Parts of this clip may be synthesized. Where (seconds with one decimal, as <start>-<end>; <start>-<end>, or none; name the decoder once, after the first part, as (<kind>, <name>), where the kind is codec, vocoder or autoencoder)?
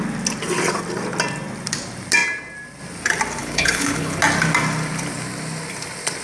3.4-4.2 (codec, HILCodec)